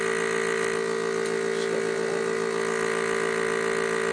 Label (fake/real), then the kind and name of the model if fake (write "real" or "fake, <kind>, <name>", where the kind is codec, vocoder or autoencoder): real